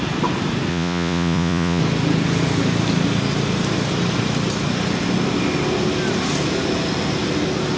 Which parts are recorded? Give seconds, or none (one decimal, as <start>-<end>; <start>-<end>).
0.0-0.7; 1.8-7.8